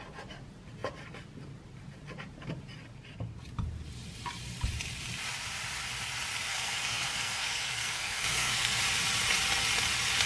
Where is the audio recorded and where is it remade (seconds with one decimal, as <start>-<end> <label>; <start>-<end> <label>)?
0.0-6.5 recorded; 6.5-8.8 remade; 8.8-10.3 recorded